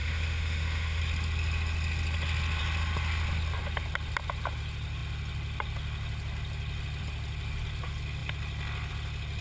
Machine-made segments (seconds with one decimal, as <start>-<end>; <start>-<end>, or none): 0.0-1.0

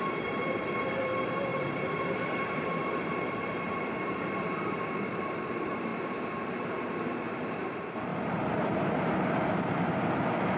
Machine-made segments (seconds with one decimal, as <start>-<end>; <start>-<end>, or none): 0.0-5.9; 6.5-10.6

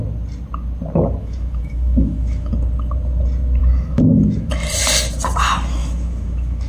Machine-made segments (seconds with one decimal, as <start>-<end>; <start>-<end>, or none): 1.2-2.5; 3.6-4.5; 5.8-6.7

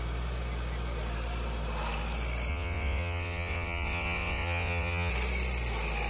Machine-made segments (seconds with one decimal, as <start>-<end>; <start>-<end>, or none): 2.5-5.1

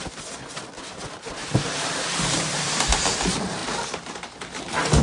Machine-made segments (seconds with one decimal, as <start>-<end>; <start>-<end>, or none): 1.4-3.0

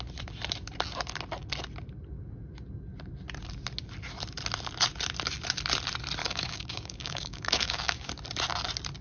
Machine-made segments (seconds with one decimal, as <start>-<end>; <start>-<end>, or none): 6.2-8.1

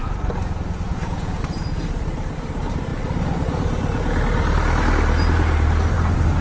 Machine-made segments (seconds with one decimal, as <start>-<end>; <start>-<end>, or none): 0.9-1.4

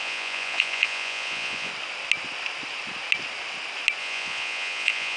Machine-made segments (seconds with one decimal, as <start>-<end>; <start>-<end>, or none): 0.0-1.7; 4.0-5.2